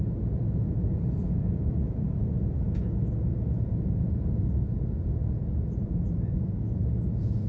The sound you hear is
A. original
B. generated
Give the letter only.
B